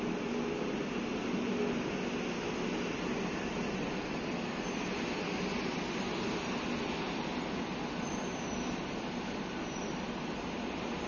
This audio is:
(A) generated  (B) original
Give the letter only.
B